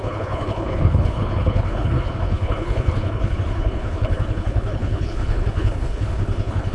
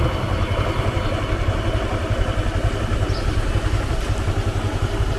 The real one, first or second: second